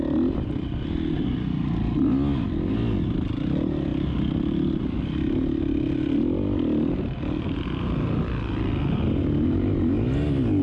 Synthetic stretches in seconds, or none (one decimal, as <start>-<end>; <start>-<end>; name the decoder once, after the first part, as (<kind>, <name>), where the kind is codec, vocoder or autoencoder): none